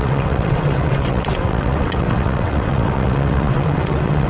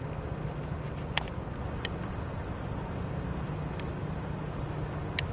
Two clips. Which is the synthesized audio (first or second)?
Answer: first